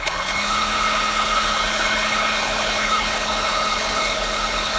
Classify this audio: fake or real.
fake